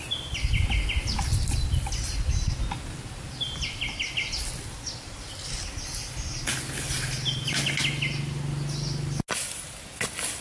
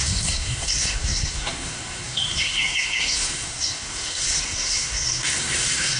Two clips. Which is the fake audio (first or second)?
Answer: second